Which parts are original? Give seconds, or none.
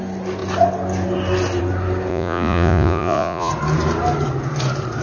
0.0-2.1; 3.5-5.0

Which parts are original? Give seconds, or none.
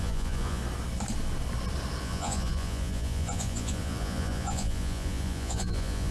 0.6-2.0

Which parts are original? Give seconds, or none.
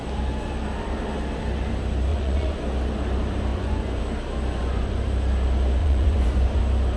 0.0-2.1; 2.6-3.5; 4.0-4.5; 5.0-5.8; 6.6-7.0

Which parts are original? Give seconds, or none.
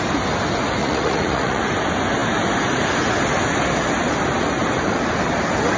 0.0-0.8; 1.6-5.8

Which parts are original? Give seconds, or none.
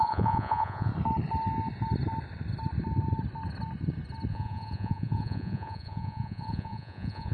0.9-4.3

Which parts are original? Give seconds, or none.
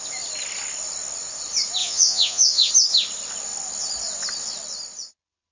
0.0-1.8; 2.7-5.5